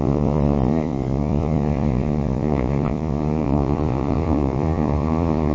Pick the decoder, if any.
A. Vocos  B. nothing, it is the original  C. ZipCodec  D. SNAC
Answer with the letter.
A